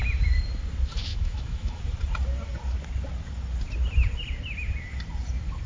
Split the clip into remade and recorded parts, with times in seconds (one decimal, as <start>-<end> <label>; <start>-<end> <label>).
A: 0.0-1.1 recorded; 1.1-1.8 remade; 1.8-5.7 recorded